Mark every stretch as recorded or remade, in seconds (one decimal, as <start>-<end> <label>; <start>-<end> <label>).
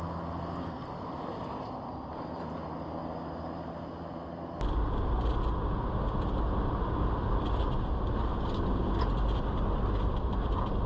0.0-10.9 recorded